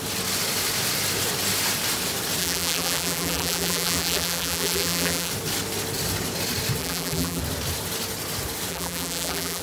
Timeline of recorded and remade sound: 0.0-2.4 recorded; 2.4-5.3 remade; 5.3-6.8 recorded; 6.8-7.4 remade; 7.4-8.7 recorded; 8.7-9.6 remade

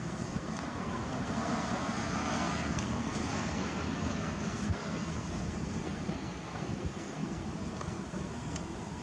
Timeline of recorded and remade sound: 0.0-9.0 remade

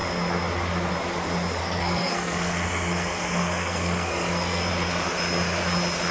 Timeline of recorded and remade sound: 0.0-1.6 recorded; 1.6-4.7 remade; 4.7-6.1 recorded

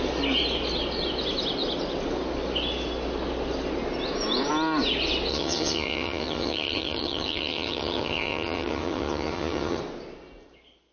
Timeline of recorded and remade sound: 0.0-5.3 recorded; 5.3-9.8 remade; 9.8-10.9 recorded

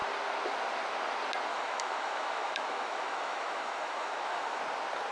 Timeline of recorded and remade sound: 0.0-1.5 recorded; 1.5-4.6 remade; 4.6-5.1 recorded

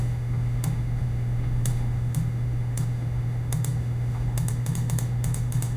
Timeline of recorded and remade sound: 0.0-5.8 remade

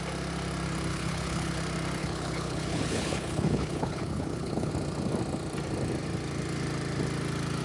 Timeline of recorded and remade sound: 0.0-0.9 recorded; 0.9-1.6 remade; 1.6-2.0 recorded; 2.0-4.7 remade; 4.7-7.6 recorded

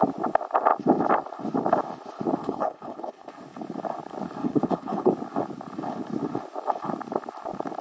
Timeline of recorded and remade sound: 0.0-2.4 recorded; 2.4-3.3 remade; 3.3-4.4 recorded; 4.4-5.1 remade; 5.1-7.8 recorded